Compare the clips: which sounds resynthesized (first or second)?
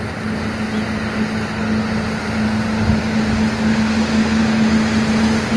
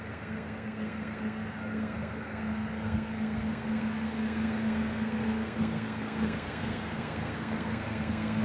second